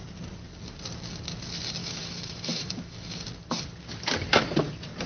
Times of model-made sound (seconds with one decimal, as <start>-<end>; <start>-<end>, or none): 1.8-3.1